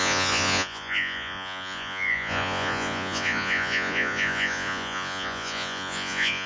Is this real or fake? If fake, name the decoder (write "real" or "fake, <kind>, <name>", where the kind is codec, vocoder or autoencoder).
fake, vocoder, Vocos